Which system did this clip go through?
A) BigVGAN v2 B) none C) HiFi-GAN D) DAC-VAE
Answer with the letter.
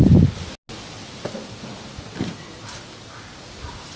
B